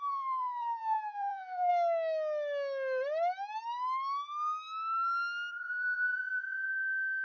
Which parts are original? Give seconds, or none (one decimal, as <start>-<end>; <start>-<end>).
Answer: 1.7-5.5